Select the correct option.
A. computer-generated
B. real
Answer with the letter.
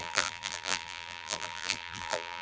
A